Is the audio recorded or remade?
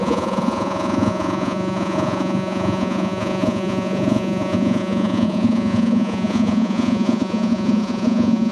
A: remade